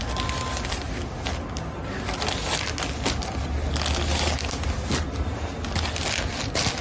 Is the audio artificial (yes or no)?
no